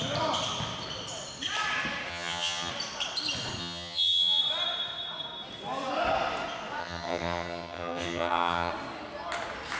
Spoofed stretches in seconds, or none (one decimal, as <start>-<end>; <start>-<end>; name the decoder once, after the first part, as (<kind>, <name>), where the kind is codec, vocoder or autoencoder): 2.1-2.7 (vocoder, HiFi-GAN); 3.6-4.4; 6.8-8.7